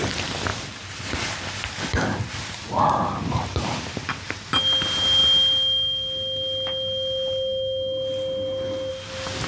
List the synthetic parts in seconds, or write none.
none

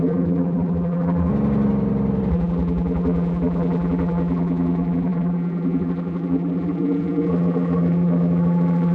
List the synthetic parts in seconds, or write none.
0.0-1.3 (vocoder, BigVGAN v2); 2.3-8.9

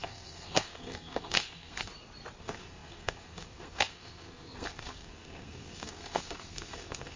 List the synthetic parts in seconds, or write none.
0.0-1.9 (codec, SNAC); 2.4-7.2

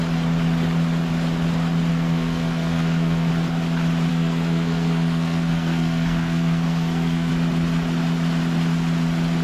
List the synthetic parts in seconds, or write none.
1.9-3.3 (codec, SNAC); 4.1-7.3

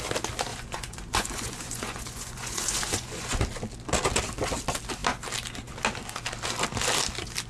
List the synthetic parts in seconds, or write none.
0.5-3.4 (vocoder, Vocos)

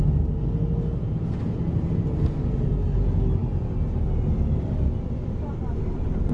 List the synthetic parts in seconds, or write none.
none